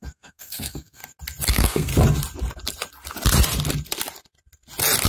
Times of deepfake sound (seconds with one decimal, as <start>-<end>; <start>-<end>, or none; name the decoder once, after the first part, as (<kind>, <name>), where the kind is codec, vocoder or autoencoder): 0.0-1.0 (codec, SNAC); 1.5-1.9